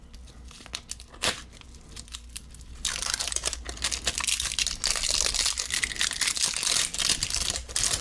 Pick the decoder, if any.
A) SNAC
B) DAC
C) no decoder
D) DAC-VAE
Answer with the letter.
C